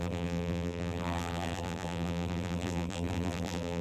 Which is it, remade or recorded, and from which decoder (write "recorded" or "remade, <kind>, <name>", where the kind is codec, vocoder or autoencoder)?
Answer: remade, vocoder, BigVGAN v2